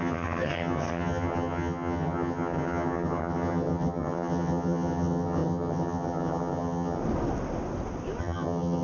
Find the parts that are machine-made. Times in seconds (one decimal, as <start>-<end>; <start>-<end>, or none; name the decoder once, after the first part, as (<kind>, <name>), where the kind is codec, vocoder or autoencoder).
0.0-7.0 (vocoder, HiFi-GAN); 8.2-8.8